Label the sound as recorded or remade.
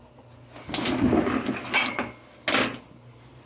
recorded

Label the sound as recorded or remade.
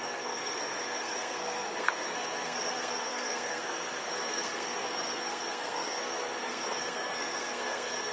remade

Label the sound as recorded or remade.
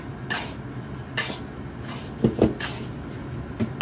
recorded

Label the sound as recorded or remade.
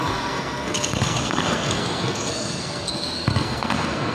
remade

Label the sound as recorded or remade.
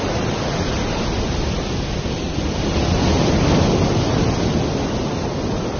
recorded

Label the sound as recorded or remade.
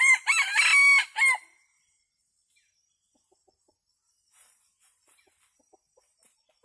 recorded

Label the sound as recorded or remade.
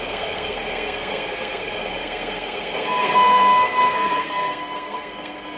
remade